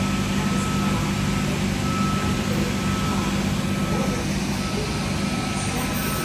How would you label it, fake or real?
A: real